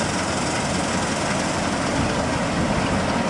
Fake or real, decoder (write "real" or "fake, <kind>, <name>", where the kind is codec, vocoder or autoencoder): real